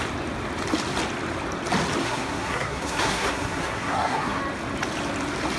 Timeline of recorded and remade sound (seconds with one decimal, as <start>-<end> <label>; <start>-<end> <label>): 0.0-2.0 recorded; 2.0-4.4 remade; 4.4-5.6 recorded